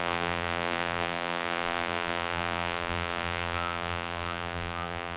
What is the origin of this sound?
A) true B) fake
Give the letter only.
B